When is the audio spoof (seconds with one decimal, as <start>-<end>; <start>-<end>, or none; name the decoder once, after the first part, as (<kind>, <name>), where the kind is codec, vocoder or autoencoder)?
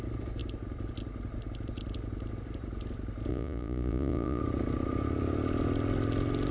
3.3-4.4 (vocoder, Vocos)